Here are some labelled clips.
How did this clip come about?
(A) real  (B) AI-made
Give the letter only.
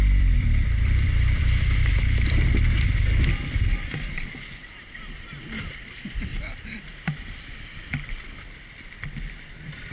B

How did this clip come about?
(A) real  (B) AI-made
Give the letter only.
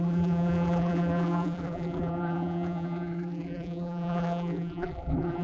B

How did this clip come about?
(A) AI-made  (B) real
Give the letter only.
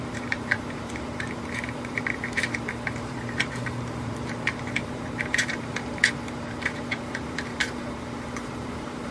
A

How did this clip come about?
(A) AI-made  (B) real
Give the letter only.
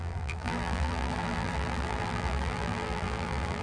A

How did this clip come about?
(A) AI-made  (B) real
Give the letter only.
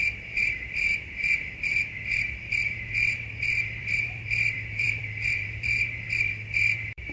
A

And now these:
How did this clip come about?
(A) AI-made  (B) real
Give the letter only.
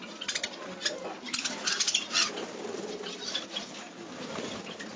B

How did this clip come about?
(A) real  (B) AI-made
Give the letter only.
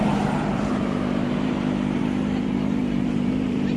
B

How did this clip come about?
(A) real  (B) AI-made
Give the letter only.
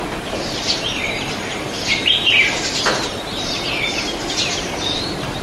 B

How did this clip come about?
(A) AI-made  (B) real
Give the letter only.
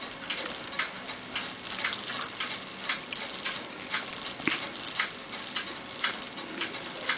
B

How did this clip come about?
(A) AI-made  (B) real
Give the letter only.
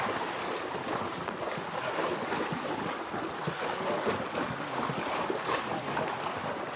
B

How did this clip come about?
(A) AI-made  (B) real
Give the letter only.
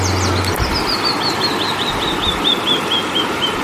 B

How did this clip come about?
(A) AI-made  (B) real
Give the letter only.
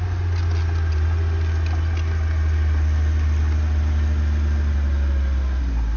B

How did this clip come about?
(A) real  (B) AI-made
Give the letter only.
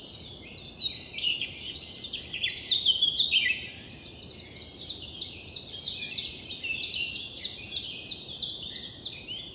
B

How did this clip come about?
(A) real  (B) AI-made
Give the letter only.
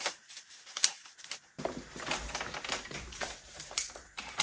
B